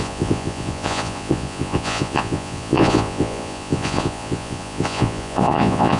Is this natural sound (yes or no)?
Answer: no